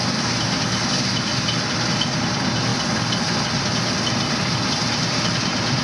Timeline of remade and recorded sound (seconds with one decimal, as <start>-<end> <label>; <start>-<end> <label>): 0.0-5.8 recorded

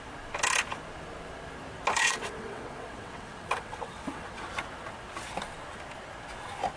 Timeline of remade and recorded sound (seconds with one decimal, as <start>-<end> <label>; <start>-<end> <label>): 0.0-2.0 recorded; 2.0-4.5 remade; 4.5-6.8 recorded

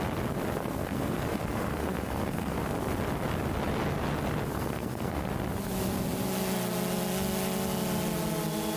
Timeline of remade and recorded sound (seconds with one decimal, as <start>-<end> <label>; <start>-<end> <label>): 0.0-0.6 recorded; 0.6-2.6 remade; 2.6-4.5 recorded; 4.5-5.3 remade; 5.3-8.8 recorded

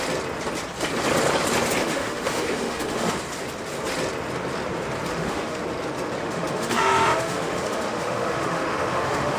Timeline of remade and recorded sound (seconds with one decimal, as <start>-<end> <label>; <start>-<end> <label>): 0.0-1.8 recorded; 1.8-3.1 remade; 3.1-5.1 recorded; 5.1-5.6 remade; 5.6-6.2 recorded; 6.2-9.4 remade

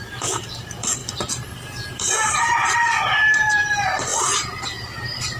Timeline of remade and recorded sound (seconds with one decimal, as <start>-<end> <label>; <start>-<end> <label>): 0.0-1.0 remade; 1.0-1.9 recorded; 1.9-5.4 remade